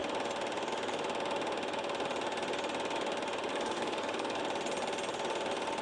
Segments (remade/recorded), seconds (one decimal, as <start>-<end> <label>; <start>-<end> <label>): 0.0-3.5 recorded; 3.5-4.4 remade; 4.4-5.8 recorded